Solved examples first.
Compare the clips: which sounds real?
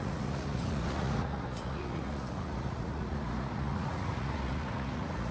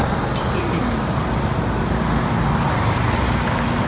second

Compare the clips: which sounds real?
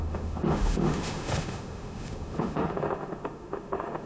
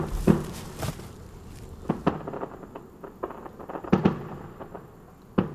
second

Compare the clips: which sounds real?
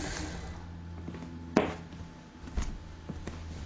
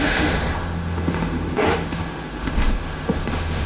first